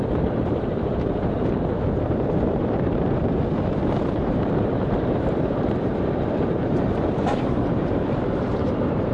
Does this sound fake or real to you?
fake